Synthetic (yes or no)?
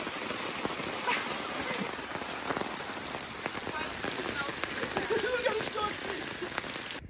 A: yes